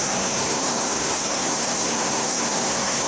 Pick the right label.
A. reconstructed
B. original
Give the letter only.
A